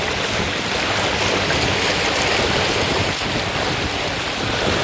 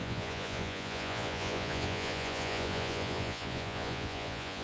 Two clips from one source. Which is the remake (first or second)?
second